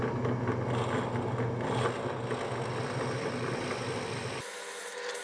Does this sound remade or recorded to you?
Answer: recorded